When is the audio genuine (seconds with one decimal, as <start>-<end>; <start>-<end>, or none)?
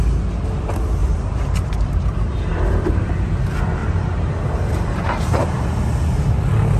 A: 0.0-1.0; 3.1-3.8; 5.6-6.8